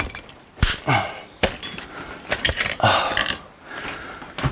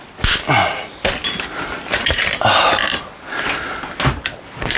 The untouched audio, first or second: second